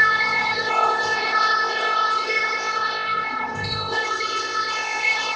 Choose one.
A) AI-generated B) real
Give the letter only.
A